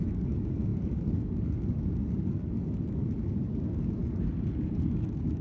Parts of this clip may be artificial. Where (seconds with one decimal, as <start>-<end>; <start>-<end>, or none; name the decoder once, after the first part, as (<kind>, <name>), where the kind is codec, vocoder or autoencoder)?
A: 0.0-4.0 (codec, DAC); 4.6-5.4